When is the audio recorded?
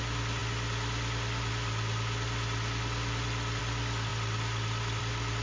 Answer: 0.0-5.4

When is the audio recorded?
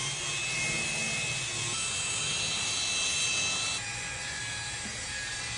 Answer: 0.0-3.9; 4.4-5.6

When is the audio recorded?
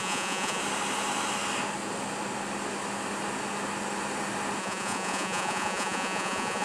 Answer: 0.6-4.6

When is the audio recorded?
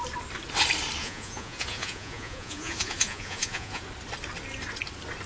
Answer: 0.0-1.0; 3.8-5.3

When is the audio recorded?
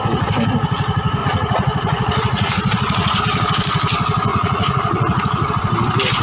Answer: 0.0-1.2; 3.2-4.3; 5.5-6.2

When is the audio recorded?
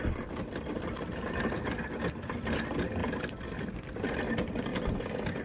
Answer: 0.0-5.4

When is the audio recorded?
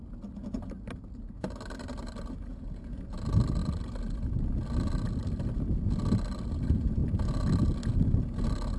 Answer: 0.0-8.8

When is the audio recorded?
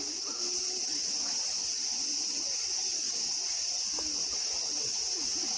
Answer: 0.0-5.6